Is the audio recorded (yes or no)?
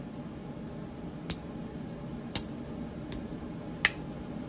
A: yes